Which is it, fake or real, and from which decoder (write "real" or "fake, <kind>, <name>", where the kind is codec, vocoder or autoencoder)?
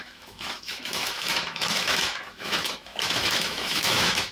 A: fake, autoencoder, DAC-VAE